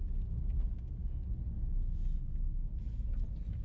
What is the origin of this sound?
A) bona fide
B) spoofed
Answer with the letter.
A